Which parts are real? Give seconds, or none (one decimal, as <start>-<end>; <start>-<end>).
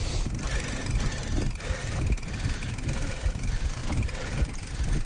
0.0-1.8; 2.7-3.8; 4.4-5.1